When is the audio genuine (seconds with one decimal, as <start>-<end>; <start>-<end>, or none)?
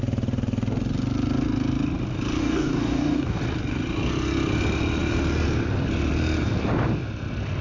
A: 0.0-2.4; 3.4-7.6